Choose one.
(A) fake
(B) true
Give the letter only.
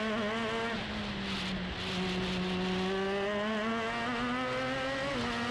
B